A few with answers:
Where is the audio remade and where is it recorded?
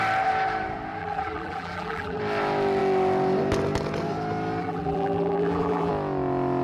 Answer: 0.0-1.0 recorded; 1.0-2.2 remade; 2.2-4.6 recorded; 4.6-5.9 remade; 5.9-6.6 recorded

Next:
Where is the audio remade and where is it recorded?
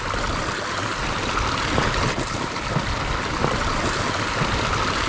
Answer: 0.0-5.1 recorded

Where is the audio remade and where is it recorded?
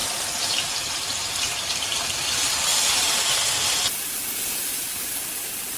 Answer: 0.0-2.3 remade; 2.3-2.7 recorded; 2.7-5.3 remade; 5.3-5.8 recorded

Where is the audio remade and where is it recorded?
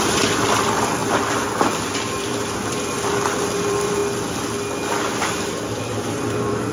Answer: 0.0-1.0 remade; 1.0-2.2 recorded; 2.2-4.0 remade; 4.0-5.2 recorded; 5.2-6.7 remade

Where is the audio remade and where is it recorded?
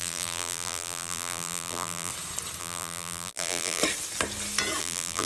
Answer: 0.0-2.1 remade; 2.1-2.6 recorded; 2.6-3.8 remade; 3.8-4.8 recorded; 4.8-5.3 remade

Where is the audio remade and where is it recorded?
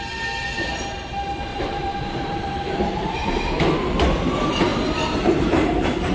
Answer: 0.0-1.5 recorded; 1.5-3.3 remade; 3.3-6.1 recorded